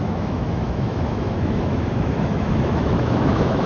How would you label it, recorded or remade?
remade